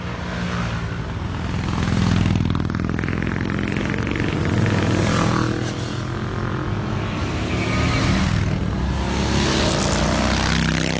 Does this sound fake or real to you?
real